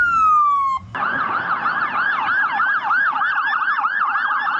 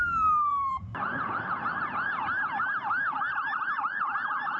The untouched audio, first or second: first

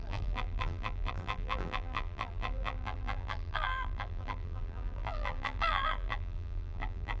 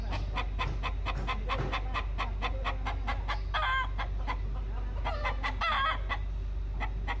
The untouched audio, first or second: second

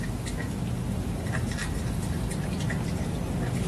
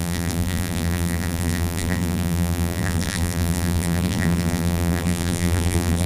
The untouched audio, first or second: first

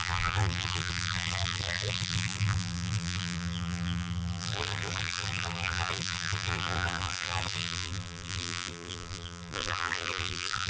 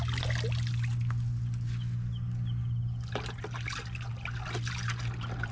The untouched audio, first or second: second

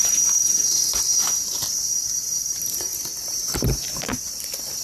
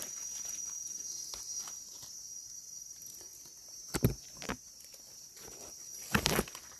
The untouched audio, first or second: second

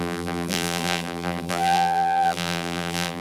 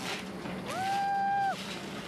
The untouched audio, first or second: second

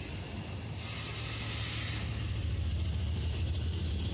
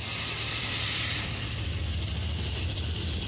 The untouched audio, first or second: first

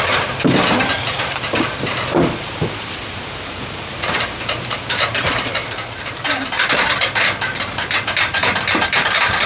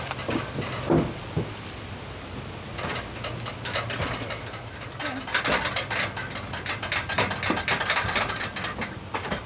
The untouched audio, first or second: second